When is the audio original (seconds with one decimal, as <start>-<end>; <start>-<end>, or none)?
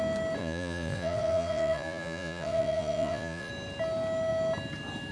0.0-0.4; 3.5-5.1